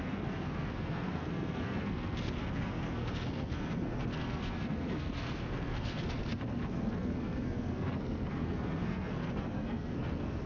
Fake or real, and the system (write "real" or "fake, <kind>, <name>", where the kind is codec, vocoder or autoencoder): fake, codec, SNAC